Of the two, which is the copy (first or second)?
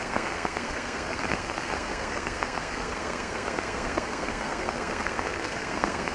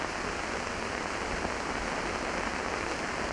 first